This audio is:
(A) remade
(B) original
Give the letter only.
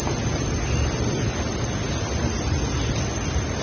B